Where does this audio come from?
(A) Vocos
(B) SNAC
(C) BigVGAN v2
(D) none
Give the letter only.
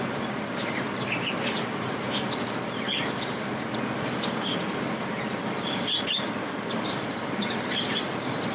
D